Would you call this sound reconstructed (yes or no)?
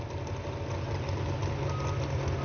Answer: no